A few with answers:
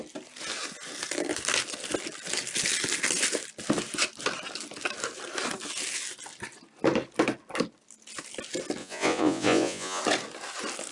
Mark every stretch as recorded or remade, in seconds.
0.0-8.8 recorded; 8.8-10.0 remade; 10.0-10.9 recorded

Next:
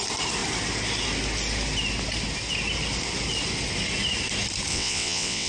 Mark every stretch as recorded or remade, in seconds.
0.0-4.7 recorded; 4.7-5.5 remade

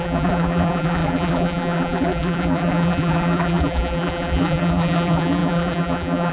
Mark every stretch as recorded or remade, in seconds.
0.0-6.3 remade

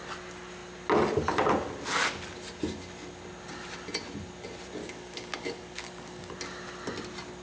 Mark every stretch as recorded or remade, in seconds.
0.0-4.8 recorded; 4.8-6.3 remade; 6.3-7.4 recorded

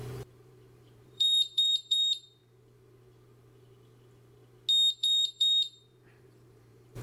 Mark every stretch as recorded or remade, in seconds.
0.0-2.4 remade; 2.4-4.9 recorded; 4.9-7.0 remade

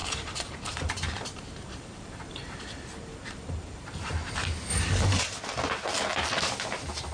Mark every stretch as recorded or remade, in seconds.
0.0-4.3 remade; 4.3-4.7 recorded; 4.7-5.2 remade; 5.2-7.1 recorded

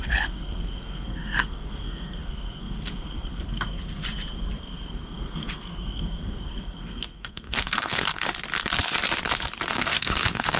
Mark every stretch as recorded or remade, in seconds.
0.0-4.0 remade; 4.0-4.6 recorded; 4.6-8.3 remade; 8.3-9.7 recorded; 9.7-10.6 remade

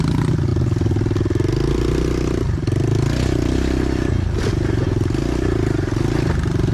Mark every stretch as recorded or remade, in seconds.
0.0-6.7 recorded